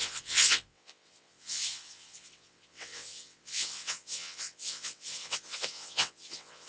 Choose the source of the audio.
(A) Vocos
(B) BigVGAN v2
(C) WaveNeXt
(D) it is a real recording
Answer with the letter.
C